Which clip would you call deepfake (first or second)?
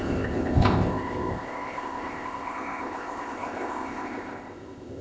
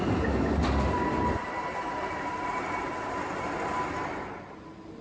first